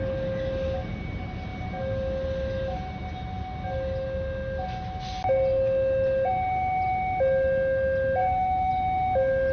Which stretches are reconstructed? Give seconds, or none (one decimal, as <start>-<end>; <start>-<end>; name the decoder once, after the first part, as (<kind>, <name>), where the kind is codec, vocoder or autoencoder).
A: 8.2-8.7 (autoencoder, DAC-VAE)